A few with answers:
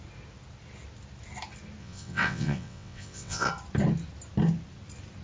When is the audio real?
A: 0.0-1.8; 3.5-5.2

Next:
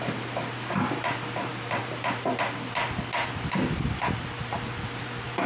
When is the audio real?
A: 0.0-5.5

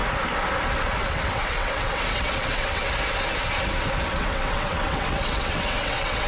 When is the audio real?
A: 0.0-1.0; 2.8-4.1

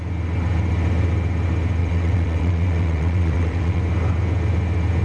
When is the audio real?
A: 0.0-1.8; 3.8-5.0

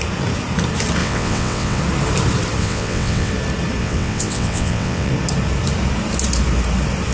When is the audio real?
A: 0.0-1.0; 1.8-2.6; 3.3-3.8; 5.1-7.1

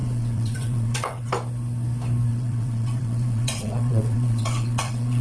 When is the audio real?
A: 1.3-2.3

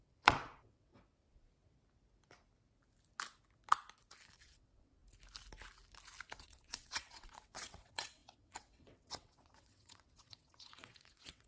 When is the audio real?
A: 0.9-4.4; 5.0-6.4